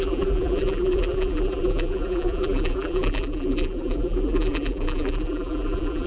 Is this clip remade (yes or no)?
yes